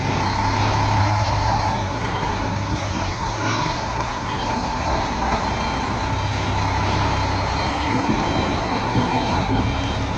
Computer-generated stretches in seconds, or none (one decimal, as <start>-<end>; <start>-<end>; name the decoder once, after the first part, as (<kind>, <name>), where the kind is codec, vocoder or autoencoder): 1.0-5.4 (codec, SNAC); 7.7-8.2; 8.6-9.6